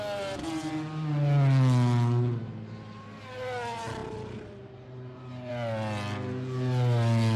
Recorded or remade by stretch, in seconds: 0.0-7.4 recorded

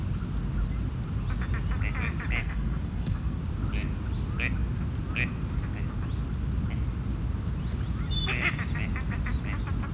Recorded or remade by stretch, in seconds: 0.0-2.4 recorded; 2.4-3.4 remade; 3.4-9.9 recorded

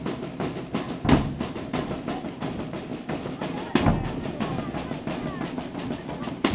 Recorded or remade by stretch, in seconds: 0.0-6.5 recorded

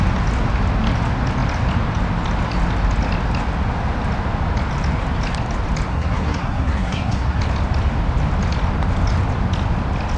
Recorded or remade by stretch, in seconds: 0.0-5.9 recorded; 5.9-7.4 remade; 7.4-10.2 recorded

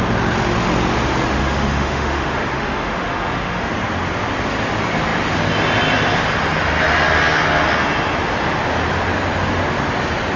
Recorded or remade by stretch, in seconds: 0.0-1.4 recorded; 1.4-3.7 remade; 3.7-10.4 recorded